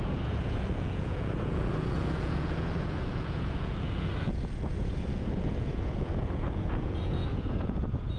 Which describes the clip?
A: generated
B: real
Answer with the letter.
A